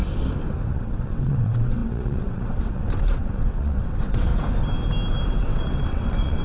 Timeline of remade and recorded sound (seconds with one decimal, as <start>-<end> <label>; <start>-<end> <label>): 0.0-0.7 recorded; 0.7-4.3 remade; 4.3-5.3 recorded; 5.3-6.4 remade

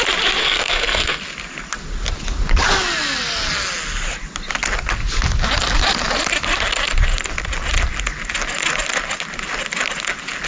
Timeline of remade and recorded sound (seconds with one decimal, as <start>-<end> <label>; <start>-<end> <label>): 0.0-0.4 recorded; 0.4-1.2 remade; 1.2-10.5 recorded